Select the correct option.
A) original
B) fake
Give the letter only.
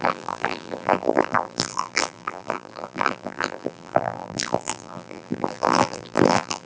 B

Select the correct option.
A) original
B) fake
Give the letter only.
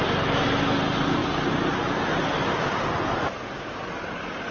A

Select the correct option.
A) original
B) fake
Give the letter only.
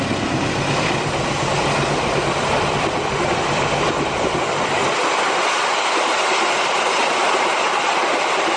A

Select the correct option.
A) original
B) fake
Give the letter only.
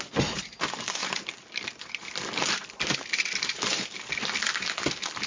A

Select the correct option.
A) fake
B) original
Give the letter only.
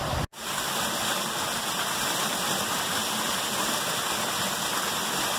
B